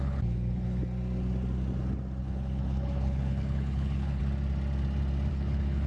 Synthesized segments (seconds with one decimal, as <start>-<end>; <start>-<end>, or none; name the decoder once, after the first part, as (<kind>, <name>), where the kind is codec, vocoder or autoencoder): 0.0-0.8 (codec, HILCodec); 2.2-4.2; 5.3-5.9